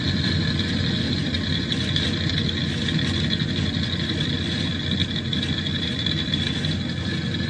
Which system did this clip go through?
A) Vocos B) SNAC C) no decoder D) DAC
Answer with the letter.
C